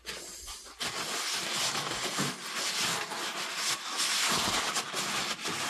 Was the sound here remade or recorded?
recorded